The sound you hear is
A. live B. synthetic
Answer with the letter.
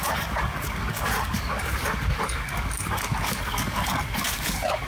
B